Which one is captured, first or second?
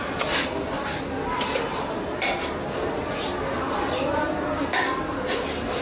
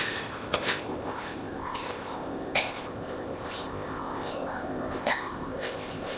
first